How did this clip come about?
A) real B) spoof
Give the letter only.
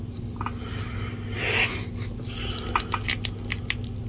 A